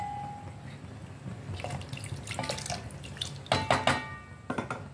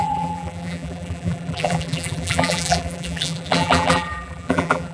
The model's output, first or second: second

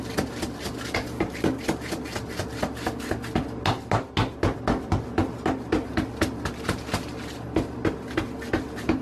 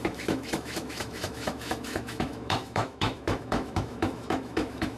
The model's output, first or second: second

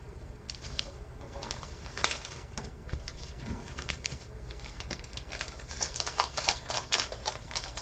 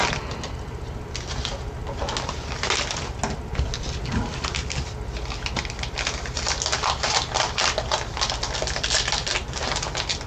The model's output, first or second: first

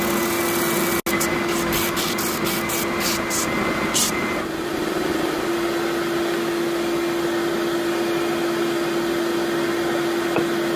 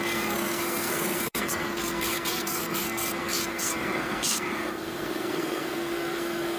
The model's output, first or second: second